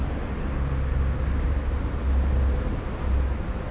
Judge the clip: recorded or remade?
recorded